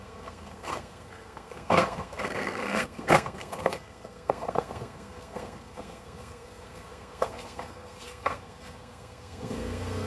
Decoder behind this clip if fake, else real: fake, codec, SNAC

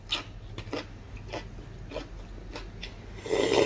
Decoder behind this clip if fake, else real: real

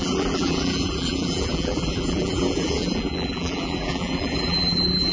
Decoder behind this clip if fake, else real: fake, vocoder, BigVGAN v2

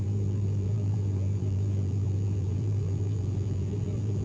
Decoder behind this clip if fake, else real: fake, vocoder, BigVGAN v2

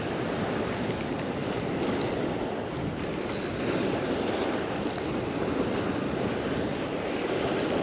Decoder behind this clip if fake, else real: real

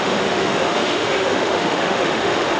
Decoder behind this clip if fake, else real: fake, autoencoder, DAC-VAE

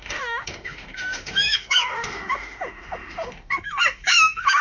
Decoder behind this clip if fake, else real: fake, autoencoder, DAC-VAE